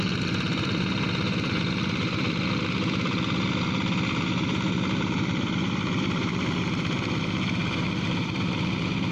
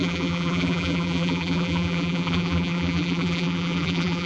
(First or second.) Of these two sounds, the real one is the first